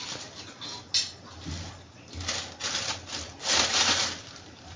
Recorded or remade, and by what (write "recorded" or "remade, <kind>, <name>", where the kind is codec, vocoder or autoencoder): recorded